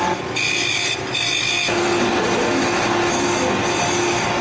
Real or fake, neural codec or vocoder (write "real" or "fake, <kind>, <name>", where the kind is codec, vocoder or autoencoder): real